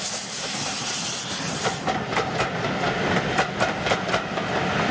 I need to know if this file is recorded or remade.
recorded